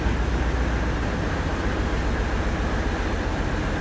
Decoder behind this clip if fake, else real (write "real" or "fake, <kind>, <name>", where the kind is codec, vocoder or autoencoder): real